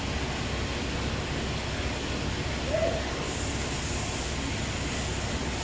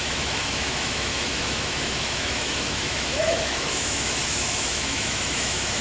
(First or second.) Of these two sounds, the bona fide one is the first